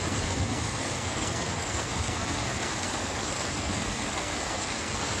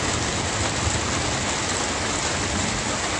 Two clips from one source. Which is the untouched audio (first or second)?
second